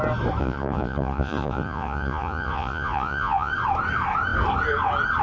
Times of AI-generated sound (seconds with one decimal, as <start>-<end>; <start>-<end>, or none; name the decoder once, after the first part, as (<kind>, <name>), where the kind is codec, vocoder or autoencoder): 0.4-3.5 (vocoder, Vocos)